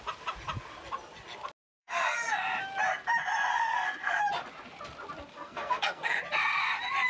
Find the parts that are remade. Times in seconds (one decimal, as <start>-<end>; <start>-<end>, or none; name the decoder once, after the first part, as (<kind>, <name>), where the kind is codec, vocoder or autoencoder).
1.8-2.3 (codec, SNAC); 3.5-4.2; 5.3-6.2